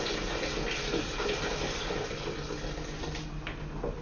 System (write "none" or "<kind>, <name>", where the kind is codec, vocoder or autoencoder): none